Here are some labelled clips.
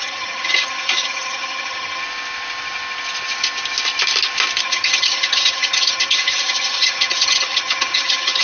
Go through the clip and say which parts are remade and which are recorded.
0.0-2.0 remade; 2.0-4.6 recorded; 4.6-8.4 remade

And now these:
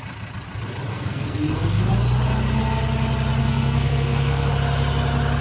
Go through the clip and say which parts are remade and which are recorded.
0.0-0.9 recorded; 0.9-1.9 remade; 1.9-3.4 recorded; 3.4-4.5 remade; 4.5-5.4 recorded

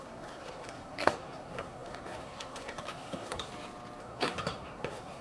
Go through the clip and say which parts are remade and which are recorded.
0.0-3.5 remade; 3.5-4.0 recorded; 4.0-5.2 remade